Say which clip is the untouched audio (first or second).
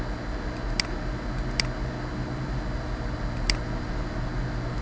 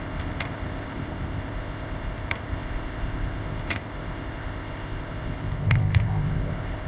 first